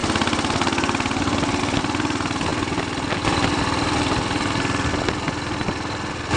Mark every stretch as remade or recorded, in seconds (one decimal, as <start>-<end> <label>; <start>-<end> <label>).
0.0-6.4 recorded